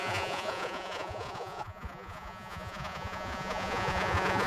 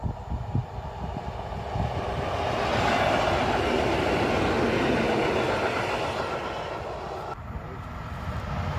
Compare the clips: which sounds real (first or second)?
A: second